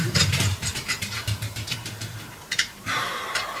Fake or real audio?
fake